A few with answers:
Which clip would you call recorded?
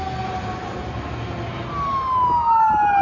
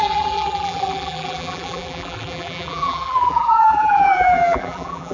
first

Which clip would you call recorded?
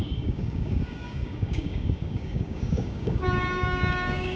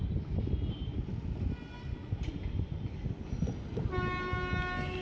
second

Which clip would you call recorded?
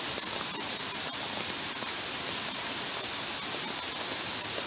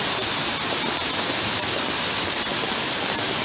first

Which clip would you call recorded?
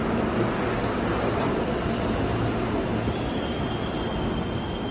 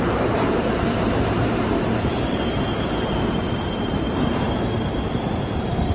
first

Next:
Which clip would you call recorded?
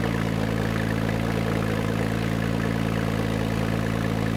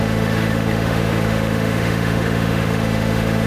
first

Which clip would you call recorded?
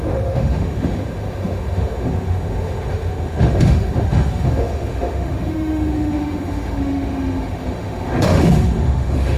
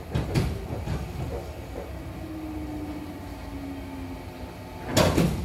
second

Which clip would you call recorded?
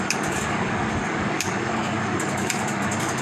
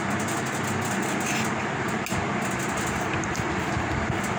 second